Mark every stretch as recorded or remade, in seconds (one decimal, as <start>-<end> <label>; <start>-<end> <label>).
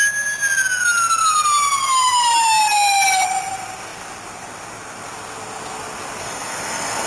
0.0-6.2 recorded; 6.2-7.1 remade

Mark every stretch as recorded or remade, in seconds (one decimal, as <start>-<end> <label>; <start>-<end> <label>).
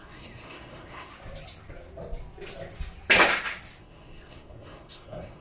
0.0-1.1 remade; 1.1-3.8 recorded; 3.8-5.4 remade